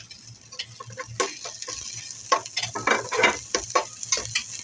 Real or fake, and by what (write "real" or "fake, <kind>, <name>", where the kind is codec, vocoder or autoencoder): real